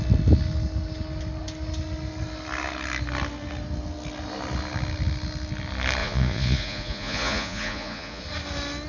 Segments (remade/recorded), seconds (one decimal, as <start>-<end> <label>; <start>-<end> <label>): 0.0-6.0 recorded; 6.0-8.2 remade; 8.2-8.9 recorded

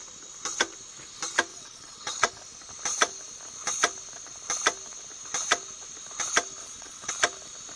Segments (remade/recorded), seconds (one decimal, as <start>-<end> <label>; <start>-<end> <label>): 0.0-1.5 recorded; 1.5-2.3 remade; 2.3-6.6 recorded; 6.6-7.1 remade; 7.1-7.8 recorded

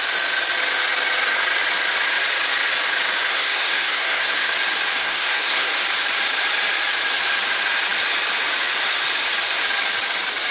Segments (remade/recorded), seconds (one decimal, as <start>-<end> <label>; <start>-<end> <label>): 0.0-3.3 recorded; 3.3-4.5 remade; 4.5-5.0 recorded; 5.0-5.7 remade; 5.7-10.5 recorded

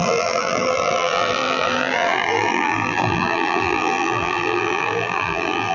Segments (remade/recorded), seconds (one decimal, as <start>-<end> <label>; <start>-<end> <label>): 0.0-5.7 remade

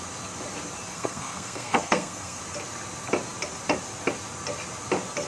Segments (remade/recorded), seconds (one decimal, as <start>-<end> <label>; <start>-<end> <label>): 0.0-0.9 recorded; 0.9-2.4 remade; 2.4-5.3 recorded

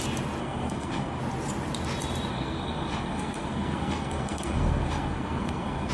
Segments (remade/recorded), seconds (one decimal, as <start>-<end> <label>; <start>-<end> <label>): 0.0-0.4 recorded; 0.4-1.2 remade; 1.2-2.3 recorded; 2.3-5.9 remade